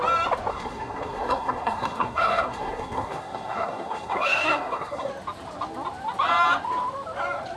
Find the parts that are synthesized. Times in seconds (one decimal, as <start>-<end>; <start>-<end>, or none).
0.5-5.1